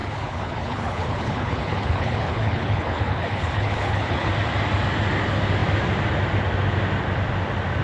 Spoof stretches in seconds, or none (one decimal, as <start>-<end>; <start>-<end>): 0.0-4.3